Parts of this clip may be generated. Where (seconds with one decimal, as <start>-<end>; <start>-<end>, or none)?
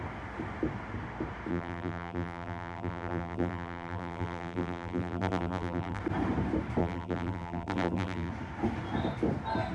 1.5-6.0; 6.8-8.3